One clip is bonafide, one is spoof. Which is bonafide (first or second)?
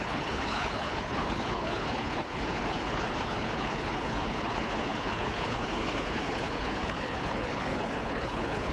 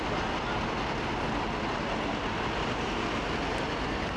second